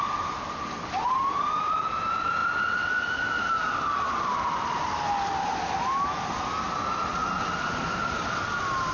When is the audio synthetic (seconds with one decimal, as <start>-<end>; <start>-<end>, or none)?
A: none